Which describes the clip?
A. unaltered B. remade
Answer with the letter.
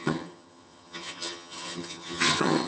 B